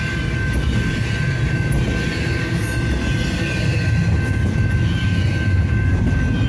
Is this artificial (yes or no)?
no